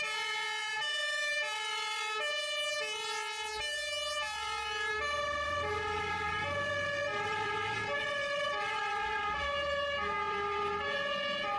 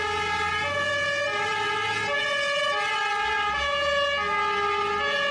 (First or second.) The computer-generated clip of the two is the first